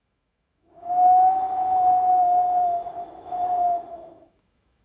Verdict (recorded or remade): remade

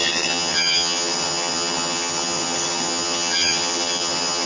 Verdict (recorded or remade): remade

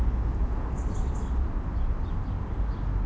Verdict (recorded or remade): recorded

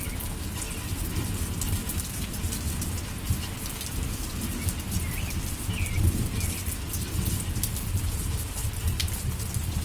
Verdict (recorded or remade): recorded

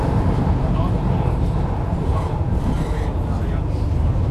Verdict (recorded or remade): recorded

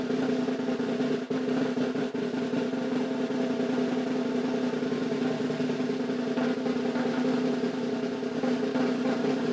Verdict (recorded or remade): recorded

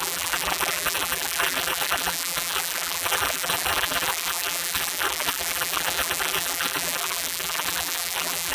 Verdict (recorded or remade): remade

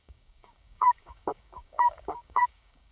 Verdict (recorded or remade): remade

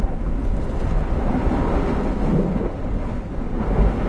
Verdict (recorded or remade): recorded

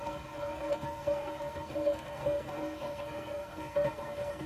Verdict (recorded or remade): remade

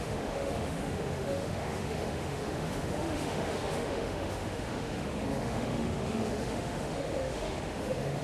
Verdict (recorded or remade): remade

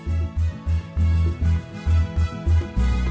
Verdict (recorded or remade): recorded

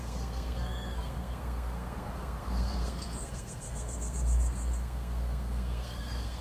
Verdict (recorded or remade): remade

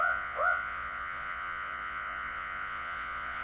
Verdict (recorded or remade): remade